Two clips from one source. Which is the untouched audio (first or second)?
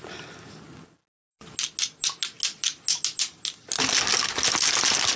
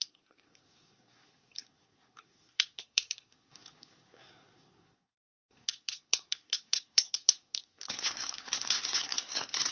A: first